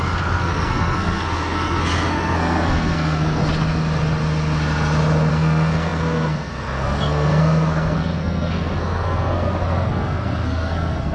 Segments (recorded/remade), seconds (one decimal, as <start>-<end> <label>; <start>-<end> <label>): 0.0-3.4 remade; 3.4-5.3 recorded; 5.3-11.1 remade

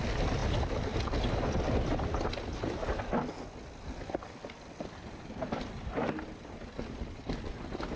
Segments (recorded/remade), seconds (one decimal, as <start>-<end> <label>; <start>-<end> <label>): 0.0-8.0 recorded

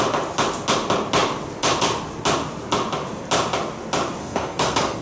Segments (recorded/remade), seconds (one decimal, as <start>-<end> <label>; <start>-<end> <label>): 0.0-4.2 recorded; 4.2-5.0 remade

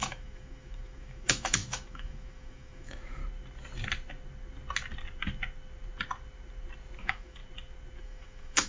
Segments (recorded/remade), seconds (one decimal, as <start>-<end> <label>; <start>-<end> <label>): 0.0-3.2 remade; 3.2-7.0 recorded; 7.0-7.4 remade; 7.4-8.0 recorded; 8.0-8.7 remade

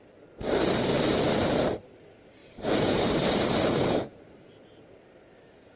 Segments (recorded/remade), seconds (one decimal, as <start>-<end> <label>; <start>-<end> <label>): 0.0-0.9 recorded; 0.9-1.6 remade; 1.6-2.4 recorded; 2.4-4.5 remade; 4.5-5.8 recorded

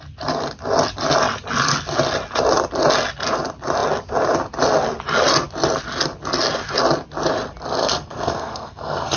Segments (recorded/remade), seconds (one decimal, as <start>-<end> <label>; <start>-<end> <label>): 0.0-7.8 recorded; 7.8-9.2 remade